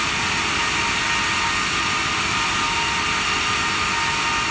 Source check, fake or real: real